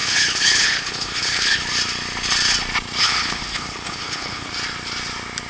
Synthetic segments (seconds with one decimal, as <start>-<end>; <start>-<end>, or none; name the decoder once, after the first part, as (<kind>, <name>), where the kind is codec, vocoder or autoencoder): 0.0-1.6 (codec, HILCodec); 3.0-4.5